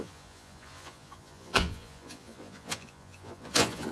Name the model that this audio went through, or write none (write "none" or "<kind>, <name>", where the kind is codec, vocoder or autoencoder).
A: vocoder, Vocos